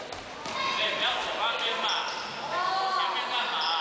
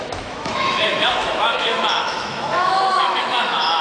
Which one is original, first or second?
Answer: first